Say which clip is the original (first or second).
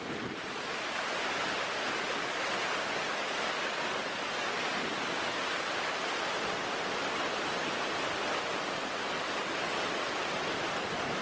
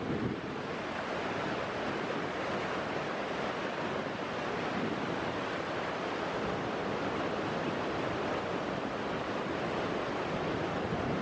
first